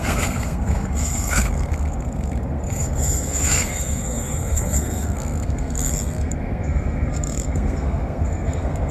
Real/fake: fake